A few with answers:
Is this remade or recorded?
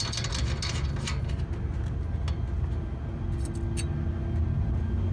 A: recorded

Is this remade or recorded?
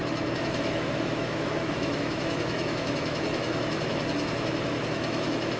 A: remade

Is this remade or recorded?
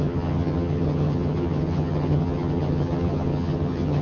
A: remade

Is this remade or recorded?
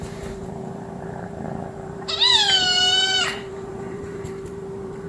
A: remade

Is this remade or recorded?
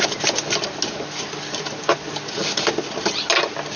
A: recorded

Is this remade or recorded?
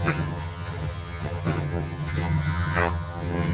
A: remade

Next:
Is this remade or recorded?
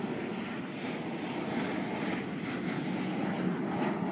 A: recorded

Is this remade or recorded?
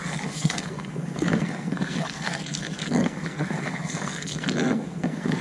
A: remade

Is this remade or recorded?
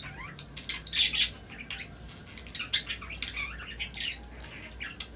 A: recorded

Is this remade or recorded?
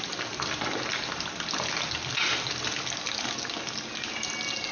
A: recorded